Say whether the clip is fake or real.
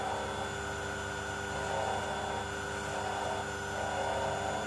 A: real